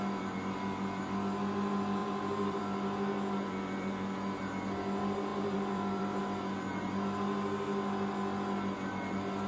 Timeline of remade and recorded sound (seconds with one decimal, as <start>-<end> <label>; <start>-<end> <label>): 0.0-2.0 recorded; 2.0-2.6 remade; 2.6-5.3 recorded; 5.3-6.2 remade; 6.2-9.5 recorded